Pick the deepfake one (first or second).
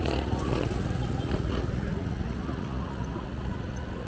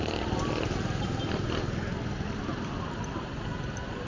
first